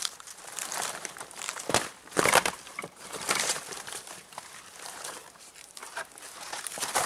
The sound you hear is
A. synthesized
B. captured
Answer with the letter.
A